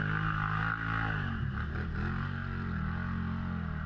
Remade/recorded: recorded